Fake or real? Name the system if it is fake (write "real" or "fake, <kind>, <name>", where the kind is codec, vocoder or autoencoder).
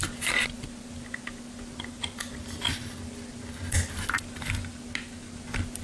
real